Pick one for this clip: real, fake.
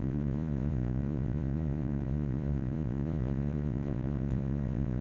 fake